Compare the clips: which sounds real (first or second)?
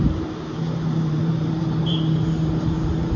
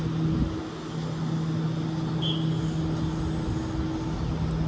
second